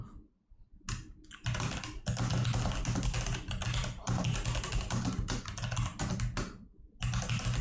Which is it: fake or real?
real